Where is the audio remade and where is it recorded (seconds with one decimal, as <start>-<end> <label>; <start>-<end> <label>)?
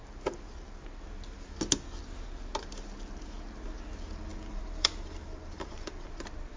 0.0-4.3 recorded; 4.3-6.1 remade; 6.1-6.6 recorded